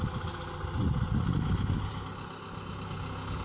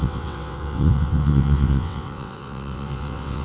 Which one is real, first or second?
first